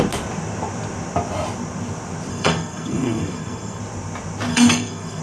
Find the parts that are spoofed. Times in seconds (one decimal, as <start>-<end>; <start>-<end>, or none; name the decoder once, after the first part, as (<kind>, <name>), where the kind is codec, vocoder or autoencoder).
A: 2.3-3.8 (codec, SNAC); 4.5-5.2

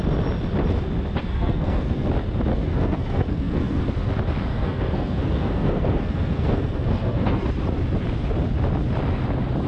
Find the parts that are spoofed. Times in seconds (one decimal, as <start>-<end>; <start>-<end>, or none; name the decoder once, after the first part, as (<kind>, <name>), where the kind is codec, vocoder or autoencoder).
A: 1.2-2.1 (codec, SNAC); 2.5-3.8; 4.5-7.4

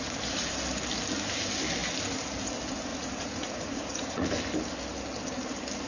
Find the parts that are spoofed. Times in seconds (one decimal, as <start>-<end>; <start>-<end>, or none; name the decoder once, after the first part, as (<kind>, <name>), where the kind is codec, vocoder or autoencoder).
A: 2.9-4.3 (vocoder, Vocos)

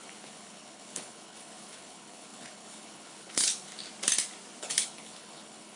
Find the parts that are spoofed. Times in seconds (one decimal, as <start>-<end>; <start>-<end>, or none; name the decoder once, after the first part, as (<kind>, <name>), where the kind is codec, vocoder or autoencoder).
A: 0.0-3.7 (codec, HILCodec); 4.6-5.8

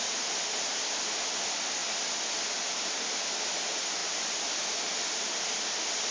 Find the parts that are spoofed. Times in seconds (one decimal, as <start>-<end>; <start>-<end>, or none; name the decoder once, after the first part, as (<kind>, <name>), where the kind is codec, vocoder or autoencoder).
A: none